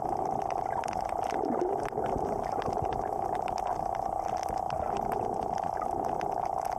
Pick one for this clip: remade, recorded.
recorded